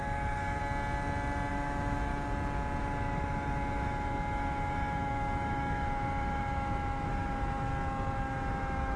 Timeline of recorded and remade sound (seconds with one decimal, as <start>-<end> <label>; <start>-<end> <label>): 0.0-0.6 remade; 0.6-1.5 recorded; 1.5-2.1 remade; 2.1-2.8 recorded; 2.8-7.7 remade; 7.7-8.2 recorded; 8.2-9.0 remade